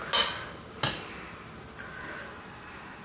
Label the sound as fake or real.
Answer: real